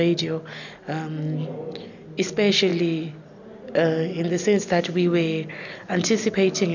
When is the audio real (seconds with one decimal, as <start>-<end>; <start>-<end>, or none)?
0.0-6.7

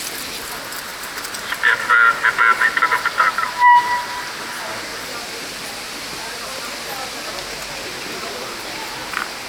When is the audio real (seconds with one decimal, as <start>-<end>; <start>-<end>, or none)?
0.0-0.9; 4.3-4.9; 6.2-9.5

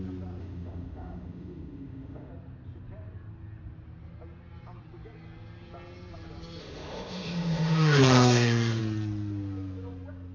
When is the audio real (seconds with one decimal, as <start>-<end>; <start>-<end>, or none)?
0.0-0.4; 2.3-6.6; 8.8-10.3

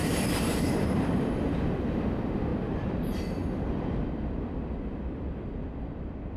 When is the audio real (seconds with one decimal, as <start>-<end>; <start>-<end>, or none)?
1.6-2.5; 3.6-6.4

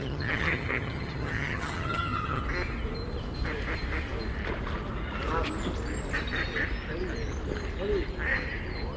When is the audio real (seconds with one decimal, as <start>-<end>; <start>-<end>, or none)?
2.4-9.0

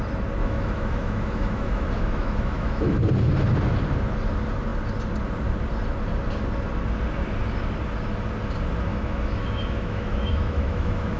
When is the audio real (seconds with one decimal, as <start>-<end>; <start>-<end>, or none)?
0.0-0.4; 3.0-8.9

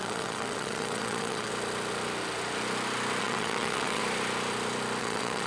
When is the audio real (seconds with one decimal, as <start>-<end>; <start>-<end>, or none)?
1.5-3.2; 4.0-5.0

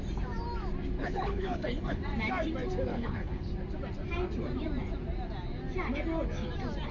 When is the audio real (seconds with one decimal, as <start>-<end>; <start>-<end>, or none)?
0.0-1.0; 2.0-2.9; 3.5-6.9